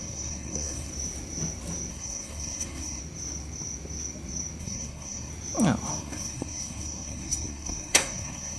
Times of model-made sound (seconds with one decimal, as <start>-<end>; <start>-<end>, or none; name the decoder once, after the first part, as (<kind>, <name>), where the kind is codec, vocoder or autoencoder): 0.0-0.9 (codec, SNAC); 1.9-3.0; 4.6-5.3; 5.9-8.6